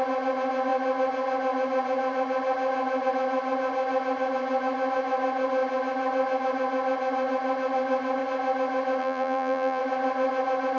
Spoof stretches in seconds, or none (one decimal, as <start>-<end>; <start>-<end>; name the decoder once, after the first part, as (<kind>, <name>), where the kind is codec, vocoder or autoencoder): 9.0-9.8 (vocoder, BigVGAN v2)